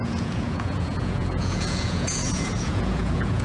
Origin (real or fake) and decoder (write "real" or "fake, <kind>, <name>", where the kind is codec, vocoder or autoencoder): fake, vocoder, Vocos